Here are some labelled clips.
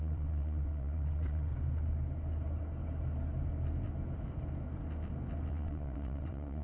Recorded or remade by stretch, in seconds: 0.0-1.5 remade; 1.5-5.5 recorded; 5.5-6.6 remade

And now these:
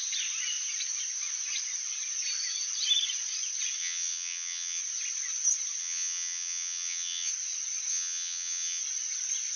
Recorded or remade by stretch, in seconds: 0.0-3.8 recorded; 3.8-4.8 remade; 4.8-5.8 recorded; 5.8-7.3 remade; 7.3-7.9 recorded; 7.9-8.8 remade; 8.8-9.6 recorded

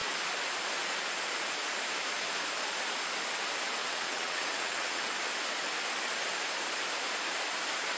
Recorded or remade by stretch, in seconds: 0.0-3.8 recorded; 3.8-5.0 remade; 5.0-8.0 recorded

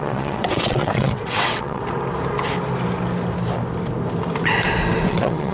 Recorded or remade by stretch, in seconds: 0.0-1.8 remade; 1.8-5.1 recorded; 5.1-5.5 remade